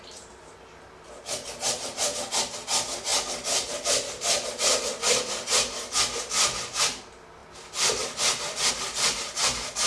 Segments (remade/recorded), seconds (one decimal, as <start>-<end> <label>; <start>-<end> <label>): 0.0-9.9 recorded